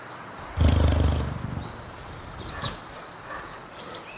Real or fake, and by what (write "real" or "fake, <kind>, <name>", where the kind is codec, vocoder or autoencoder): real